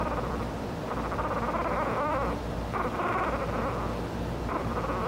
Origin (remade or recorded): remade